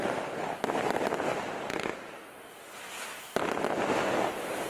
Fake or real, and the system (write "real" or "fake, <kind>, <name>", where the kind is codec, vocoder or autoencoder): real